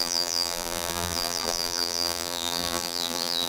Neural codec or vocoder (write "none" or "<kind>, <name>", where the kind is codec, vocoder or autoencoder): vocoder, BigVGAN v2